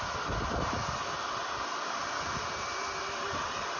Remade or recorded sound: recorded